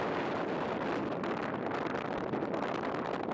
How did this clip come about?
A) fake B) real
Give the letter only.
B